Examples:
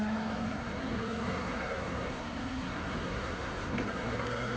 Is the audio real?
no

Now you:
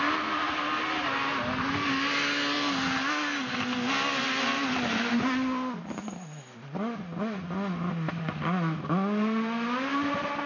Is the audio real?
yes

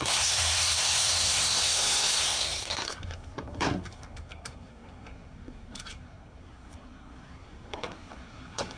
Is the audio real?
no